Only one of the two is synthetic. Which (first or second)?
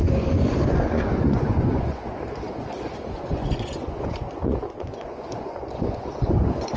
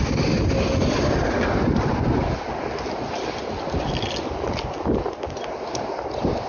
first